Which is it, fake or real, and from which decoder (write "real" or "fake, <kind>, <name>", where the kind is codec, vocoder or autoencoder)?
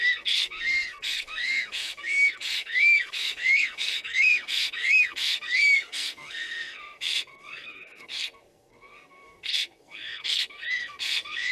fake, codec, SNAC